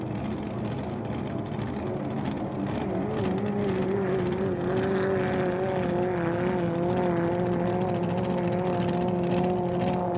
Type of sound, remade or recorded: recorded